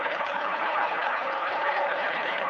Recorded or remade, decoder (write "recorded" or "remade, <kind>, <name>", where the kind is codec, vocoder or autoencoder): remade, codec, HILCodec